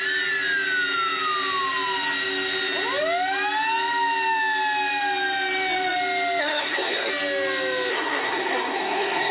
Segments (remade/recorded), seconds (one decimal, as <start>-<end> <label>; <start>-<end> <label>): 0.0-6.4 recorded; 6.4-7.1 remade; 7.1-7.9 recorded; 7.9-9.3 remade

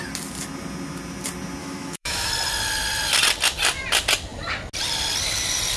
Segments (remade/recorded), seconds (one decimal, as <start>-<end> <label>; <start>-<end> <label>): 0.0-1.6 recorded; 1.6-2.3 remade; 2.3-5.8 recorded